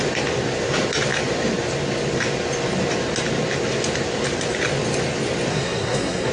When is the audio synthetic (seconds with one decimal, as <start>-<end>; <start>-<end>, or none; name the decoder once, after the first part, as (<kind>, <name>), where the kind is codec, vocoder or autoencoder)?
5.5-6.3 (codec, SNAC)